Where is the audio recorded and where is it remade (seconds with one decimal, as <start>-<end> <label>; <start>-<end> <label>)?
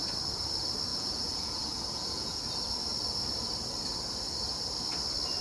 0.0-0.9 recorded; 0.9-2.4 remade; 2.4-5.4 recorded